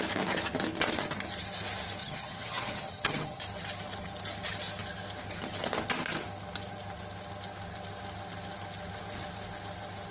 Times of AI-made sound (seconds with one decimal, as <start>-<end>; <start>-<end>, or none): 2.0-3.4